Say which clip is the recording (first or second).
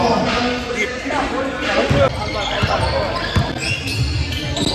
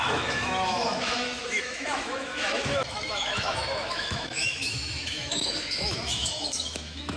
first